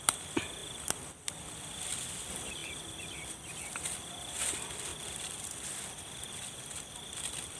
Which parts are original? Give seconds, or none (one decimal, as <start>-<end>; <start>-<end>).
0.0-7.6